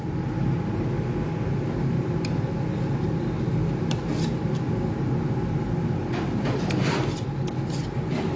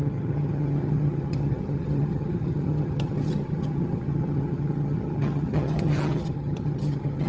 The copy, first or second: second